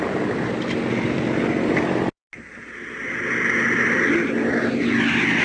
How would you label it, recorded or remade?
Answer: recorded